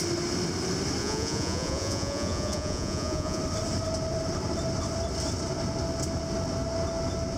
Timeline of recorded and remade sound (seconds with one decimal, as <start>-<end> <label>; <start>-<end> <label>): 0.0-1.0 recorded; 1.0-3.4 remade; 3.4-7.4 recorded